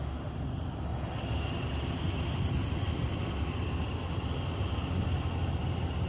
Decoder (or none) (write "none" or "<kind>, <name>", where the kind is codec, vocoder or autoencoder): none